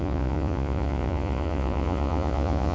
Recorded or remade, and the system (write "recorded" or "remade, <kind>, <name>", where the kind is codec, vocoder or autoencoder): remade, vocoder, Vocos